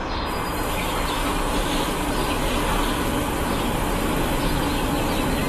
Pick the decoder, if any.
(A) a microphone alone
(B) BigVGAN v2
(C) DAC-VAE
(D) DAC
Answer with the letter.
A